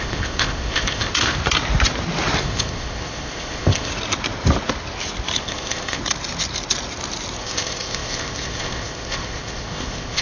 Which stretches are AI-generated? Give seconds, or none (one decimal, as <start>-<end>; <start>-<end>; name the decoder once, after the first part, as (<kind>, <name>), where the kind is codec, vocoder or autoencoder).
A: 0.0-1.4 (codec, ZipCodec); 2.4-3.9; 5.4-6.0; 7.4-10.2